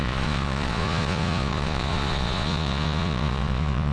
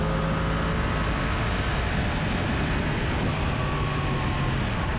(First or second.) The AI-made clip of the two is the first